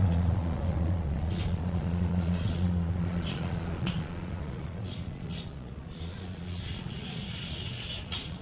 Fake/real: fake